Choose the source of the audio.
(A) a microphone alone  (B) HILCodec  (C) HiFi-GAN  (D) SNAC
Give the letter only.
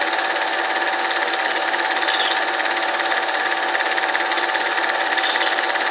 A